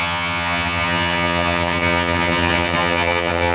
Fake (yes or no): yes